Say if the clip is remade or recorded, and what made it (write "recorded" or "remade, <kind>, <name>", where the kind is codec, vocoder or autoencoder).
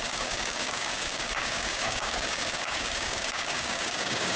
remade, codec, DAC